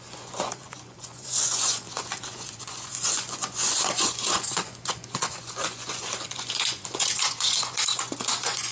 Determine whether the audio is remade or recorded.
remade